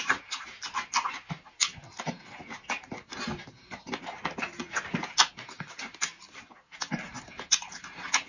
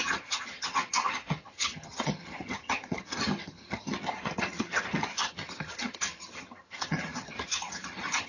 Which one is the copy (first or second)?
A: second